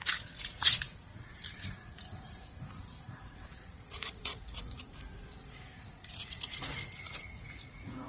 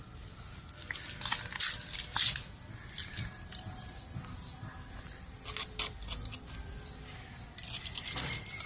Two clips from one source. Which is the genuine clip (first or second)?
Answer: second